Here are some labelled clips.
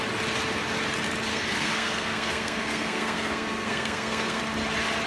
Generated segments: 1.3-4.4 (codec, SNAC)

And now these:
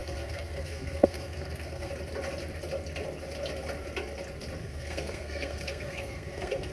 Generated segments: 0.0-1.9 (codec, SNAC); 4.6-6.7

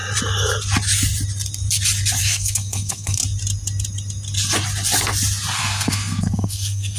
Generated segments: 2.2-3.2 (codec, SNAC); 5.6-7.0

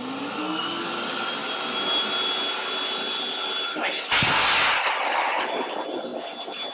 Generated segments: 0.4-0.9 (codec, SNAC)

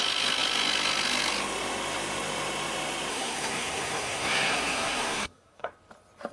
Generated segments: 3.1-5.7 (codec, SNAC)

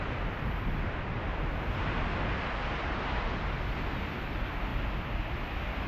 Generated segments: none

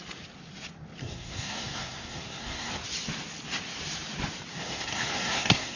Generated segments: 1.0-2.7 (codec, SNAC); 4.5-5.8